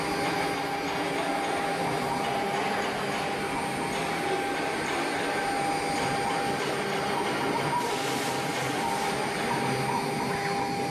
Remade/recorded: recorded